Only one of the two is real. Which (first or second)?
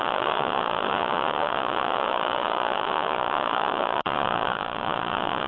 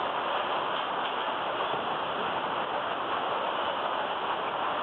second